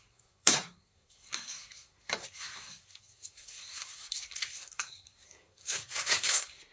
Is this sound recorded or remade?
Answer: remade